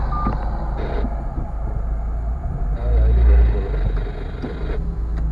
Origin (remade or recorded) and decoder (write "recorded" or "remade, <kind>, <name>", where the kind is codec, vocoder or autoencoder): recorded